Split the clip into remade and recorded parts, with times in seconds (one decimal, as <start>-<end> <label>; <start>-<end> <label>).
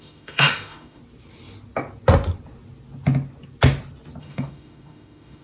0.0-1.0 remade; 1.0-4.2 recorded; 4.2-5.4 remade